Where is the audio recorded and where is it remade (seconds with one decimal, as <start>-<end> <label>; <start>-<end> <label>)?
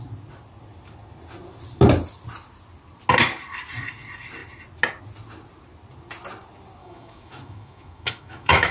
0.0-6.8 recorded; 6.8-8.7 remade